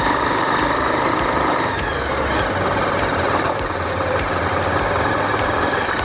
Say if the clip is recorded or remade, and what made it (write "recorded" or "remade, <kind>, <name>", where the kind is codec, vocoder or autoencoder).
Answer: remade, vocoder, BigVGAN v2